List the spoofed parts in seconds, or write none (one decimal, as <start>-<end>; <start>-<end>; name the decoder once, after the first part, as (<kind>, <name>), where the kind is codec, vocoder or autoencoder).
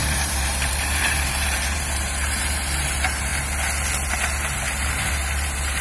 0.0-3.3 (vocoder, BigVGAN v2); 4.1-5.8